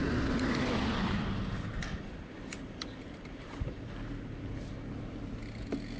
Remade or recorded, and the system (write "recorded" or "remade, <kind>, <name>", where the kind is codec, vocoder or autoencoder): recorded